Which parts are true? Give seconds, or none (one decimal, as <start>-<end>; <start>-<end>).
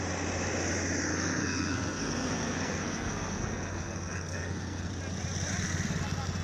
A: 0.0-1.1; 4.9-6.4